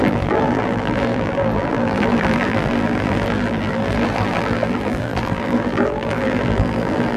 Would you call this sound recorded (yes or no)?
no